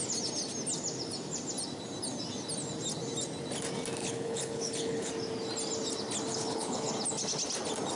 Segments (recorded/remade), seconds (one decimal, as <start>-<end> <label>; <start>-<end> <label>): 0.0-4.0 recorded; 4.0-5.1 remade; 5.1-6.3 recorded; 6.3-6.9 remade; 6.9-8.0 recorded